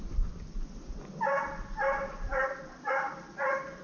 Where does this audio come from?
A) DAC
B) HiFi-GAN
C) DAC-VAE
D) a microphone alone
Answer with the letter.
D